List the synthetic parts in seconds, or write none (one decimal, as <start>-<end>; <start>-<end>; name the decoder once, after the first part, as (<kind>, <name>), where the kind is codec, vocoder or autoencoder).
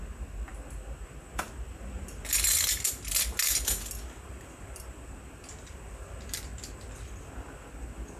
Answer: none